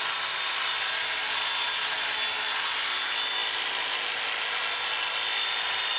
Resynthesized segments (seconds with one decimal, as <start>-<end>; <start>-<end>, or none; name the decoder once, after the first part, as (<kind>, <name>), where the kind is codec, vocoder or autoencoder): none

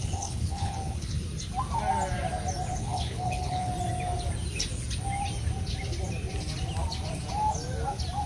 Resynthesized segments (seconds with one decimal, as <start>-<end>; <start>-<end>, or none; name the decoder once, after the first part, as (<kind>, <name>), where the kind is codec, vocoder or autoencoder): 0.0-1.2 (codec, HILCodec); 2.7-3.7

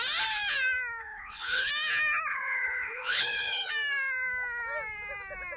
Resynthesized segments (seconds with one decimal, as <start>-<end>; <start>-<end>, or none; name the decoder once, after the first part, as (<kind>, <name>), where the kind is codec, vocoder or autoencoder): 1.0-1.7 (codec, HILCodec); 2.3-3.7

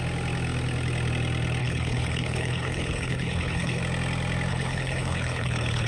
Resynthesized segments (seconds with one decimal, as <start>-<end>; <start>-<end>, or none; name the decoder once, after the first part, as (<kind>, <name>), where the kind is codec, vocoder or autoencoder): 1.6-3.8 (codec, HILCodec); 4.5-5.9